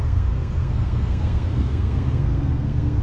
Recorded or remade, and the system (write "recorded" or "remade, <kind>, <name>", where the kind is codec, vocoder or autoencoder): remade, codec, SNAC